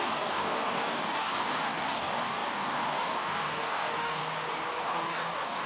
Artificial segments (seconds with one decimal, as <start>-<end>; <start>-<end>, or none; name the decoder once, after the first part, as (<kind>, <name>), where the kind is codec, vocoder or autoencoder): 0.0-4.2 (codec, DAC); 4.8-5.7